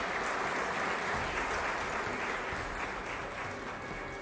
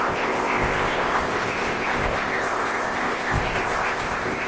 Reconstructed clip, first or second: second